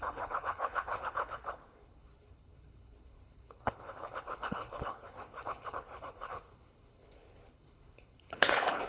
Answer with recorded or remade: remade